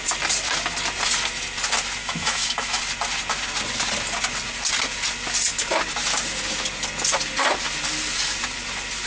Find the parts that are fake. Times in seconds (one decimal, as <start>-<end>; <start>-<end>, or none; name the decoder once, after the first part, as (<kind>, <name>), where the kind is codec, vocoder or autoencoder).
2.0-2.8 (autoencoder, DAC-VAE)